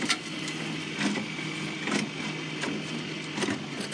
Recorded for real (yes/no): yes